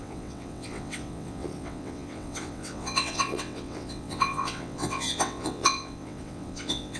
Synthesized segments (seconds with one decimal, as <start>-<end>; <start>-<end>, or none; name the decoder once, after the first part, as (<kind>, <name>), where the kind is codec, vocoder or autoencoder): 0.0-7.0 (vocoder, WaveNeXt)